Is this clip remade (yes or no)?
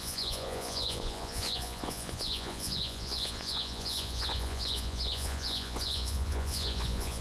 yes